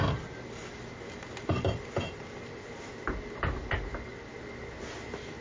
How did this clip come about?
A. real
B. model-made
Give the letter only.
A